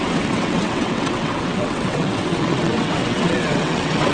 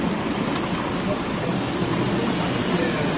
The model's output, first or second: first